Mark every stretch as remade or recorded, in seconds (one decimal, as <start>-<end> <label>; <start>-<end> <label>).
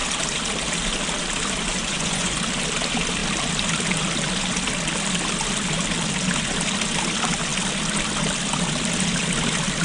0.0-1.8 recorded; 1.8-2.4 remade; 2.4-9.8 recorded